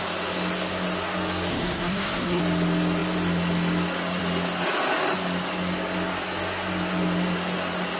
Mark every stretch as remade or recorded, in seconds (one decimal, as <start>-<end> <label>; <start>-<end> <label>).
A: 0.0-1.5 recorded; 1.5-2.4 remade; 2.4-8.0 recorded